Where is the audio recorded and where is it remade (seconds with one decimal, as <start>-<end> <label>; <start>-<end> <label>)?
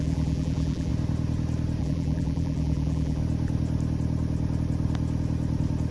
0.0-0.9 remade; 0.9-1.8 recorded; 1.8-3.2 remade; 3.2-5.9 recorded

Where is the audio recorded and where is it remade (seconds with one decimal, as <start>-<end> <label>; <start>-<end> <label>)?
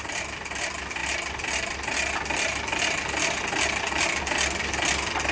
0.0-5.3 recorded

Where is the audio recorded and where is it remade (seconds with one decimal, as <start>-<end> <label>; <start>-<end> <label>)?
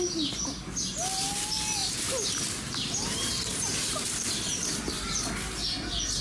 0.0-1.8 recorded; 1.8-5.1 remade; 5.1-6.2 recorded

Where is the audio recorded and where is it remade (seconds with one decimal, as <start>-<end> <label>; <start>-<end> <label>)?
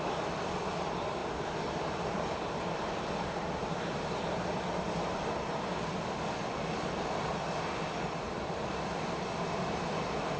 0.0-1.2 remade; 1.2-2.1 recorded; 2.1-7.3 remade; 7.3-7.8 recorded; 7.8-10.4 remade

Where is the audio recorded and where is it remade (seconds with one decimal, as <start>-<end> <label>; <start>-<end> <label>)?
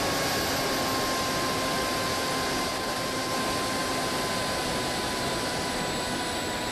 0.0-2.7 recorded; 2.7-3.3 remade; 3.3-6.7 recorded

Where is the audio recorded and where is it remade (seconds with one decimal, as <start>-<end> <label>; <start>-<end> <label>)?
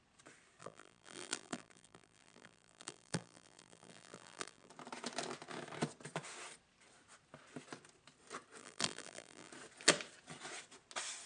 0.0-0.6 recorded; 0.6-4.7 remade; 4.7-8.6 recorded; 8.6-9.5 remade; 9.5-11.3 recorded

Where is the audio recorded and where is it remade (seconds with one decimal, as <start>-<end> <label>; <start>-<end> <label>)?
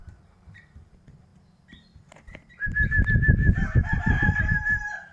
0.0-1.3 remade; 1.3-4.4 recorded; 4.4-5.1 remade